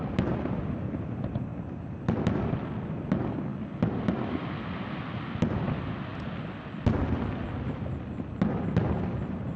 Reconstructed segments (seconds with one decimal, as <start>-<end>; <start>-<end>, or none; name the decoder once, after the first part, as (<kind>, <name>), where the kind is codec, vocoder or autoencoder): 1.5-2.6 (vocoder, BigVGAN v2)